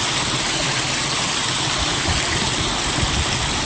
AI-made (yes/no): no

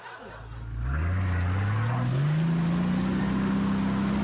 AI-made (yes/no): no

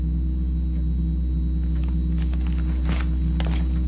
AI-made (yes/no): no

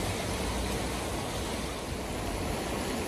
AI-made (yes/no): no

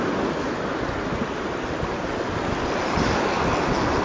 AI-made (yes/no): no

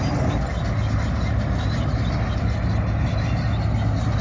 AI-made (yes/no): no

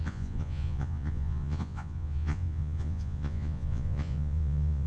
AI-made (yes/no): yes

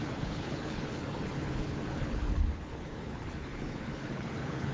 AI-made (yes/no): yes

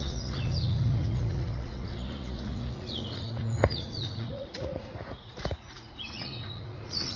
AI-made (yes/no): yes